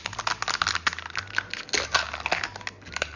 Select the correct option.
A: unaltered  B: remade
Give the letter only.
A